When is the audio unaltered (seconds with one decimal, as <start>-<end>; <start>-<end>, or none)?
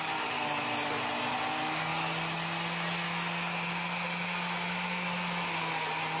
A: 0.0-6.2